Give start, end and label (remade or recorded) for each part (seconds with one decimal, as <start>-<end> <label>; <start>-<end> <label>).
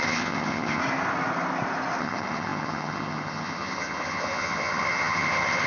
0.0-0.8 remade; 0.8-2.0 recorded; 2.0-5.7 remade